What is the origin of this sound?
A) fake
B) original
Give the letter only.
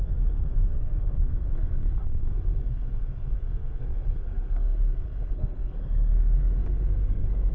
A